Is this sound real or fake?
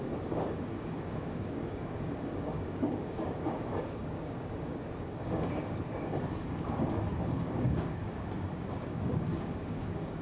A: fake